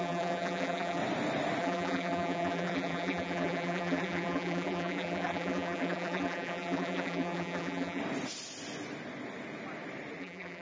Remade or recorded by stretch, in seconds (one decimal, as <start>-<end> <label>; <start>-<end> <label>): 0.0-1.0 remade; 1.0-1.6 recorded; 1.6-8.0 remade; 8.0-10.2 recorded; 10.2-10.6 remade